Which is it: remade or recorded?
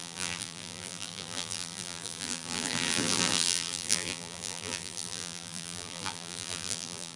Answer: remade